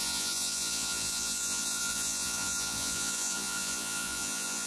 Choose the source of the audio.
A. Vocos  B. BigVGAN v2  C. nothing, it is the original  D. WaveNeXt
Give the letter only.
A